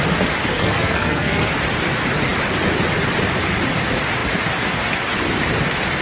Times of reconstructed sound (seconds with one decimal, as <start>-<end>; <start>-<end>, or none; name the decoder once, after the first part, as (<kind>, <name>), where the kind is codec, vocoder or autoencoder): 0.5-1.5 (codec, SNAC)